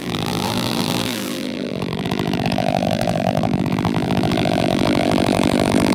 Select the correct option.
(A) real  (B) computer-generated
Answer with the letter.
B